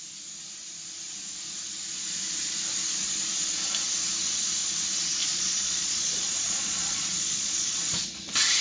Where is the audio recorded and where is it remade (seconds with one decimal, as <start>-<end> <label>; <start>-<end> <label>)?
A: 0.0-5.2 recorded; 5.2-8.1 remade; 8.1-8.6 recorded